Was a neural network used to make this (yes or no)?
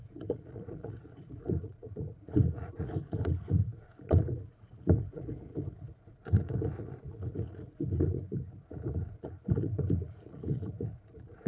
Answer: yes